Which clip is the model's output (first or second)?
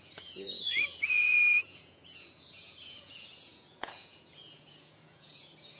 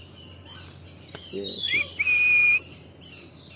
first